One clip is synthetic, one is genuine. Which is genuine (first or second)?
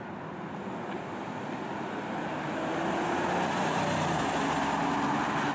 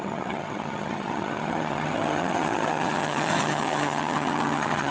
first